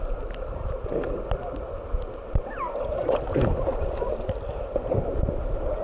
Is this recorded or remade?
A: recorded